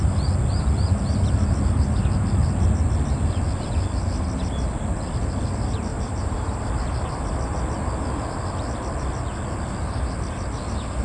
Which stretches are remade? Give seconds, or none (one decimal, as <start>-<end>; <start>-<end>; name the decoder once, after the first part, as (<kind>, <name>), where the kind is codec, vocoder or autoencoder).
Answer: 5.9-6.6 (vocoder, BigVGAN v2)